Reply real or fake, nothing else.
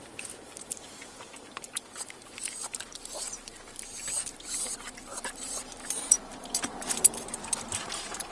fake